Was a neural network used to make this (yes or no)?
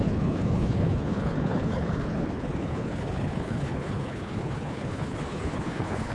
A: yes